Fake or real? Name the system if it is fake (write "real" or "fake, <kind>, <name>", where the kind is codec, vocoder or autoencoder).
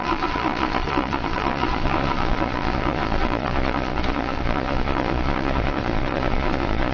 fake, vocoder, Vocos